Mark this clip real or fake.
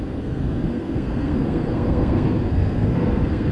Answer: fake